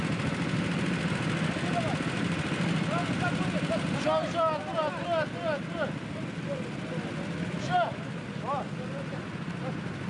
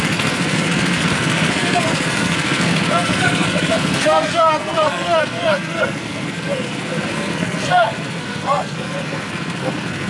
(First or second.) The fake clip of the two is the second